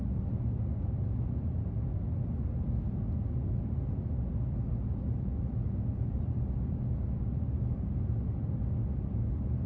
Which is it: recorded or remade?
recorded